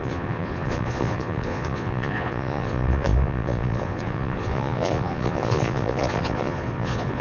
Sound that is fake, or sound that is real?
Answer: fake